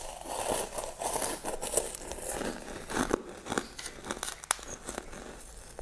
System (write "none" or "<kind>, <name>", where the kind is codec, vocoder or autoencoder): none